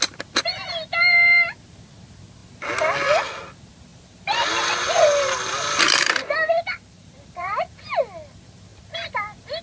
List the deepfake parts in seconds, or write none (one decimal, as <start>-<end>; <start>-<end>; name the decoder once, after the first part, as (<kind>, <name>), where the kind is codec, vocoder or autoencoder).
3.9-8.0 (vocoder, BigVGAN v2)